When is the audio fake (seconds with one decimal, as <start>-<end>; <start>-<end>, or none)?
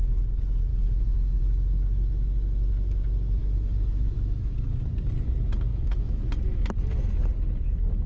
0.7-1.4; 3.4-4.7; 5.7-6.2